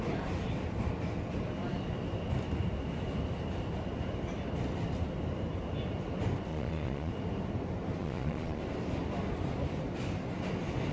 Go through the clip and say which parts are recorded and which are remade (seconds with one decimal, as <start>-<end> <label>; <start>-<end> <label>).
0.0-6.5 recorded; 6.5-7.1 remade; 7.1-8.0 recorded; 8.0-8.6 remade; 8.6-10.9 recorded